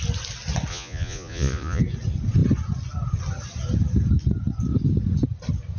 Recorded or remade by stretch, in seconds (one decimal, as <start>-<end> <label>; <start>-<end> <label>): 0.0-0.7 recorded; 0.7-1.8 remade; 1.8-5.8 recorded